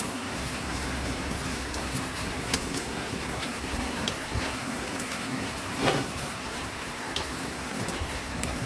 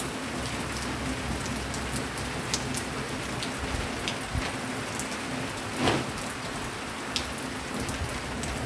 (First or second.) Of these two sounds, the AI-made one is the first